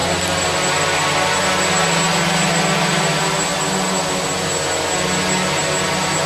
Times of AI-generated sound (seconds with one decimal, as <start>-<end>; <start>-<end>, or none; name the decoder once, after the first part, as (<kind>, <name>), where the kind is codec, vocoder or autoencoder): none